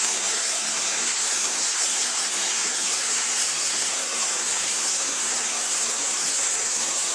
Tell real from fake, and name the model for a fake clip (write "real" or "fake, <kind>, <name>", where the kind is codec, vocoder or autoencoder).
fake, codec, SNAC